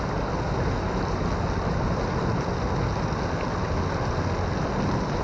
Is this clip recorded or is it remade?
recorded